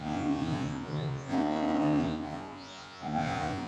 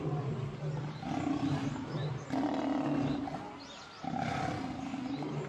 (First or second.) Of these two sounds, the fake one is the first